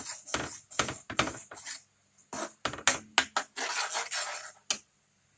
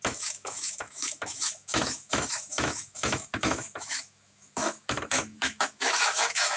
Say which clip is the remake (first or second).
second